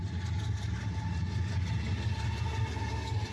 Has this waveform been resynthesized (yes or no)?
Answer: no